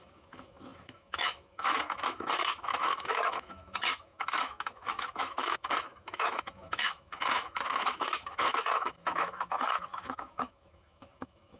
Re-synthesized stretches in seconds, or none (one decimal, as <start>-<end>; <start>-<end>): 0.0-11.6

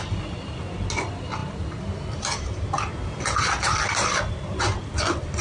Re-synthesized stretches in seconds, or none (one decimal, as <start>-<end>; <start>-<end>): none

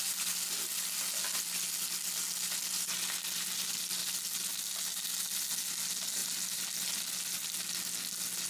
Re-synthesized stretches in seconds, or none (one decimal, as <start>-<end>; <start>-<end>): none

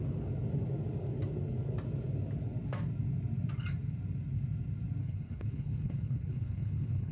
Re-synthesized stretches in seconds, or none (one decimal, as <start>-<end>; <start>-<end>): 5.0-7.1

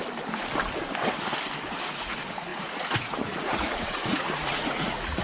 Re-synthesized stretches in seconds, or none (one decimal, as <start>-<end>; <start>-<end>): 1.7-5.2

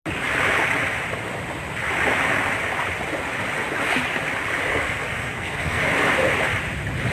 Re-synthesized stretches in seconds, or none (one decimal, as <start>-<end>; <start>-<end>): 4.7-5.8

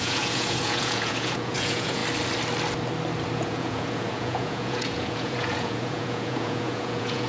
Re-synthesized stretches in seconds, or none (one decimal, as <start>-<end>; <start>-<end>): 0.0-2.0; 3.3-7.3